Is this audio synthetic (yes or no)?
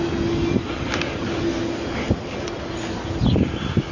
no